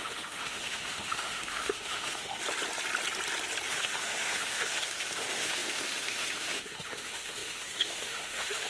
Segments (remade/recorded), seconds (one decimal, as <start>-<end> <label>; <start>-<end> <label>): 0.0-2.4 remade; 2.4-3.7 recorded; 3.7-8.7 remade